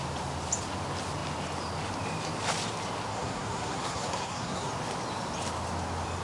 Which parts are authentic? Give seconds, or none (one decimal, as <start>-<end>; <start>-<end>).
0.0-3.1; 4.7-6.2